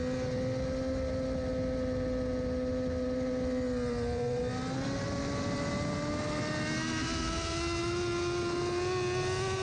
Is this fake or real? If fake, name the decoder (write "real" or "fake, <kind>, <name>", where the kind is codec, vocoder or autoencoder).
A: real